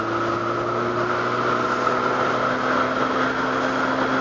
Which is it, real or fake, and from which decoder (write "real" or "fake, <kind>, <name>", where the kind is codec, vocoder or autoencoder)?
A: real